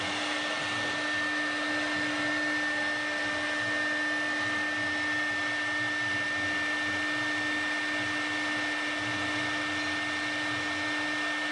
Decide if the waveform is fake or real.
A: real